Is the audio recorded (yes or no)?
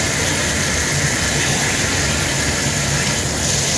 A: yes